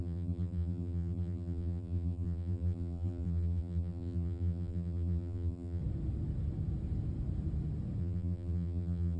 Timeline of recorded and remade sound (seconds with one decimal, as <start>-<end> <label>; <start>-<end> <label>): 0.0-5.8 remade; 5.8-8.0 recorded; 8.0-9.2 remade